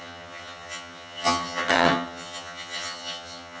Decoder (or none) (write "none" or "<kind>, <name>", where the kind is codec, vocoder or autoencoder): vocoder, HiFi-GAN